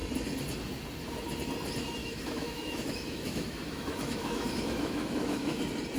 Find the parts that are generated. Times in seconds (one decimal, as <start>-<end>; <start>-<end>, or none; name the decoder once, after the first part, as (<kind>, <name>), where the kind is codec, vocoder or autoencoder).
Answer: 2.0-5.6 (autoencoder, DAC-VAE)